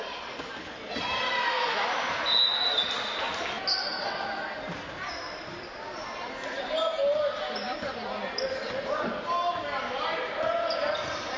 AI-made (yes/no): no